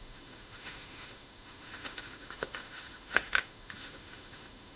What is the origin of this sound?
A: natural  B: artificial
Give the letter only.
B